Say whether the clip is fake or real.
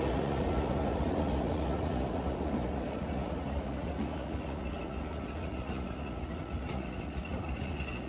fake